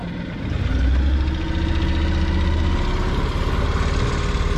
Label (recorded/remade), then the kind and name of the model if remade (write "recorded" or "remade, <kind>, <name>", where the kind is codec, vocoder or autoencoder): recorded